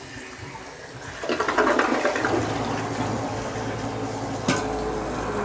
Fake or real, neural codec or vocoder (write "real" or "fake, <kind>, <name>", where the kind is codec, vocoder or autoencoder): real